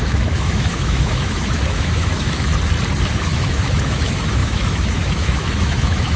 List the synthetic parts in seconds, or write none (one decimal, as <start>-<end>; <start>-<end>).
0.0-2.5; 3.1-6.2